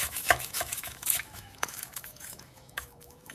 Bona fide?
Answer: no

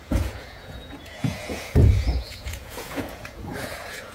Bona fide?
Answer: no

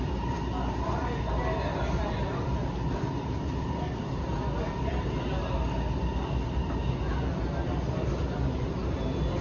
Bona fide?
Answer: yes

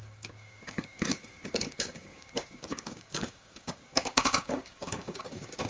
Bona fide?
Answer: no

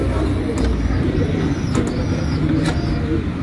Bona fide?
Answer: yes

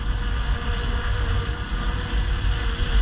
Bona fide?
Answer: yes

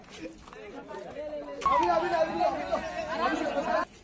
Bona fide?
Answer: yes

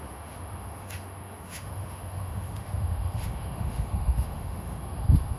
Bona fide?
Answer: no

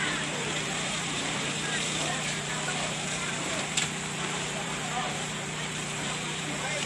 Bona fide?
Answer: no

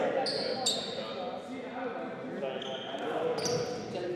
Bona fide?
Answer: yes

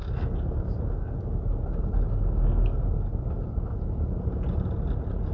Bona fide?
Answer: yes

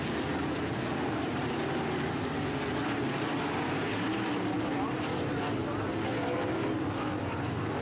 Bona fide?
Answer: yes